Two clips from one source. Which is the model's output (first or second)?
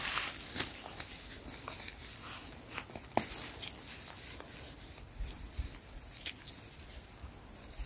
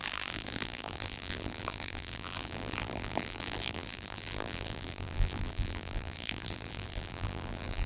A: second